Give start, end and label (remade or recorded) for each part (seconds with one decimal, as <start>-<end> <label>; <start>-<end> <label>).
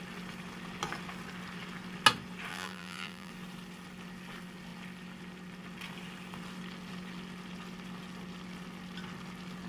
0.0-2.5 recorded; 2.5-3.3 remade; 3.3-9.7 recorded